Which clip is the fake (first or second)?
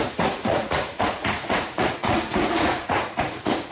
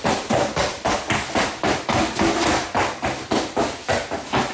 first